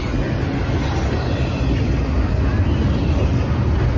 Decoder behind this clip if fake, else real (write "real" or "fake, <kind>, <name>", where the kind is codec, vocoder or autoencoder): real